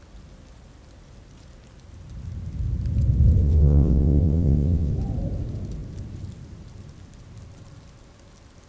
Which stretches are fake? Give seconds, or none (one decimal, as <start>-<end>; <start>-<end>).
3.4-4.9